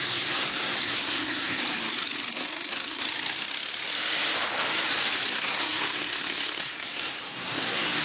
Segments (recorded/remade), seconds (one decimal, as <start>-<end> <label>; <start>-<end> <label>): 0.0-1.6 remade; 1.6-2.3 recorded; 2.3-3.0 remade; 3.0-5.3 recorded; 5.3-8.0 remade